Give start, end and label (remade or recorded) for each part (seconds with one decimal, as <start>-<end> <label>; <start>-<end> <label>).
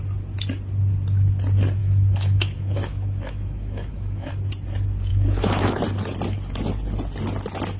0.0-1.8 recorded; 1.8-4.3 remade; 4.3-5.1 recorded; 5.1-5.8 remade; 5.8-7.8 recorded